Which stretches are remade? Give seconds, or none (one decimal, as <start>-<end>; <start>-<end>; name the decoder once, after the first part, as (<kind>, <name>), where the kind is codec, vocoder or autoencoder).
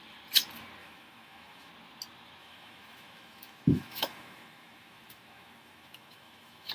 0.8-1.7 (autoencoder, DAC-VAE); 2.4-6.7